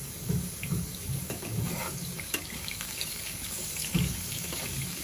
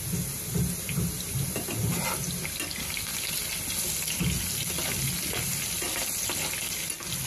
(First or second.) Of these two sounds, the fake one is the first